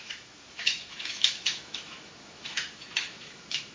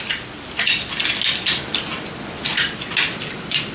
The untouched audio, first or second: second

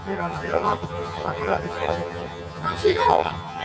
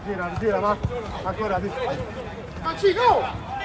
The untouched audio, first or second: second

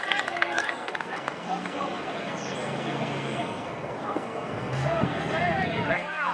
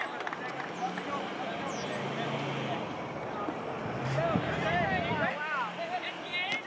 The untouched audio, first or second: second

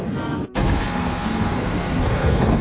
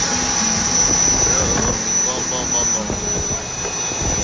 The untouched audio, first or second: second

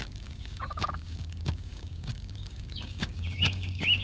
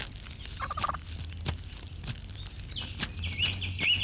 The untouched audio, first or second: second